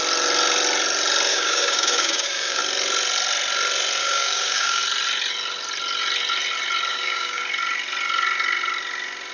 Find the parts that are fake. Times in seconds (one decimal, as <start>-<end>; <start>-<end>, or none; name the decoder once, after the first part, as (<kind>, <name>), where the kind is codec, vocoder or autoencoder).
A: 1.3-2.6 (codec, DAC); 4.0-4.8; 6.9-7.4